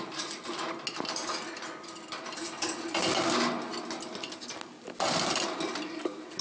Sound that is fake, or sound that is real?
real